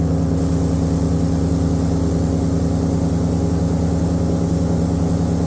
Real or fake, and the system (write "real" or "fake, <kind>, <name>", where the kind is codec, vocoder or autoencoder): real